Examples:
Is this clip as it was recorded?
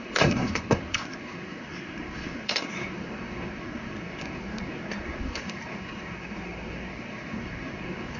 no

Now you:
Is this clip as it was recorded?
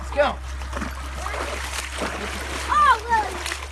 yes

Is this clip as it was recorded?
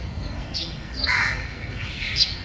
no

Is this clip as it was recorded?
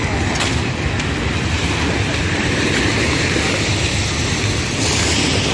yes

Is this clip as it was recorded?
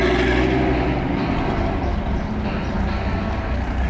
yes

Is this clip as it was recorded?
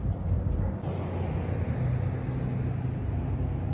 yes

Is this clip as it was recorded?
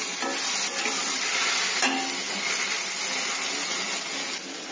yes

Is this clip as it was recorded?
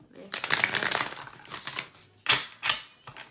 yes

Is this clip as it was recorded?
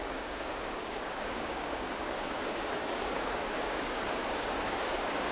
no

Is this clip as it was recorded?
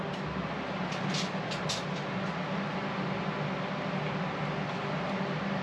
yes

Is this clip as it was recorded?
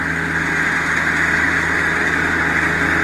yes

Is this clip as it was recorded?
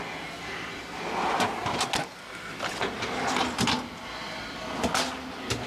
yes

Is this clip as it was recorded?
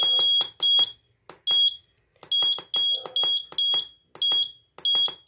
yes